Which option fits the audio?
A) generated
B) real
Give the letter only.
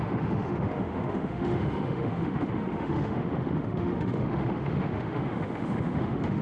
A